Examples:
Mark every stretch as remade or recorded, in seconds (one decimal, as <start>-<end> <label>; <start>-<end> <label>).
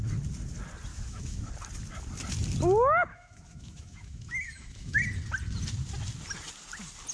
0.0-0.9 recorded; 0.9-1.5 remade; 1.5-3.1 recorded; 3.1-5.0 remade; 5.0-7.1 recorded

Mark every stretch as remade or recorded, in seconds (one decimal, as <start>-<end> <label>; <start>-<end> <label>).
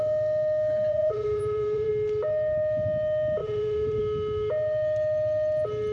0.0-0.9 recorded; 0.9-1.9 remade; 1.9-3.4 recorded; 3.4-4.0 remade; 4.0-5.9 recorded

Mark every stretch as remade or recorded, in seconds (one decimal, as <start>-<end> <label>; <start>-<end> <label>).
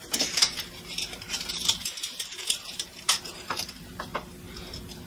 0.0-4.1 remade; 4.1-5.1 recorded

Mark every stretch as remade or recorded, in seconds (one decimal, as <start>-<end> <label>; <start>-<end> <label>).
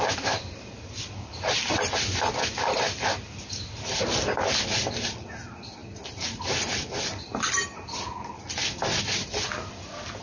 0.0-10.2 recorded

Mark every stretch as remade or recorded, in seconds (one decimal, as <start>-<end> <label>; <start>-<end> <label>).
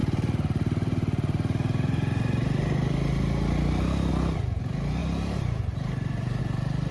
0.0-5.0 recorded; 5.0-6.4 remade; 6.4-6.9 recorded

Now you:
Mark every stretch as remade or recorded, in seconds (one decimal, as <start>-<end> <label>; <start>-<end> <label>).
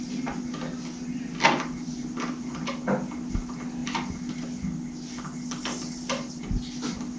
0.0-7.2 recorded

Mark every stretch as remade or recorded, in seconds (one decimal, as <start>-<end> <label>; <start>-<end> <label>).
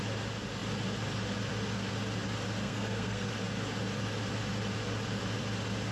0.0-2.6 recorded; 2.6-3.3 remade; 3.3-5.9 recorded